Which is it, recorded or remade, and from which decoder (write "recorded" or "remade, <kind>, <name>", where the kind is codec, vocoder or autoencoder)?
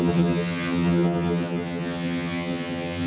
remade, vocoder, HiFi-GAN